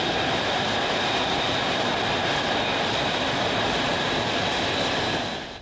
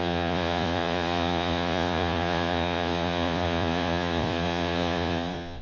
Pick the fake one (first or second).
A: second